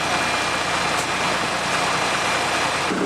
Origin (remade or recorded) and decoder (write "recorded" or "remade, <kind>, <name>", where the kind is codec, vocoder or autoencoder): recorded